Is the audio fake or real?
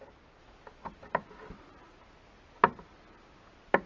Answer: real